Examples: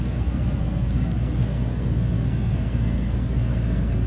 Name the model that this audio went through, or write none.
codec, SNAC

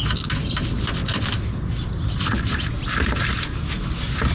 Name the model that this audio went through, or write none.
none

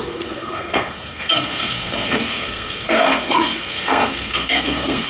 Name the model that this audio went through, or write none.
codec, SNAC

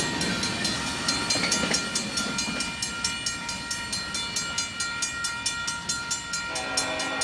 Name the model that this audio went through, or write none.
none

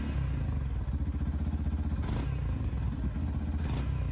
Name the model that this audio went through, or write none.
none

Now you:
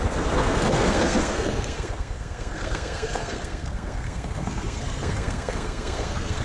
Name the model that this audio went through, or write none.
codec, SNAC